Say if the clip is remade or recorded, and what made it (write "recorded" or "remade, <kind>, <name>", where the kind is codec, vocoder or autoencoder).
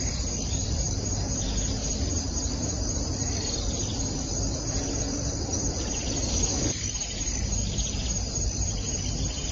recorded